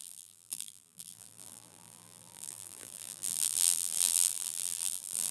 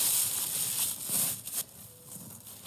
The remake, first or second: first